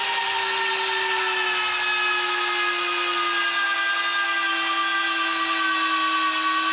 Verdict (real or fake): real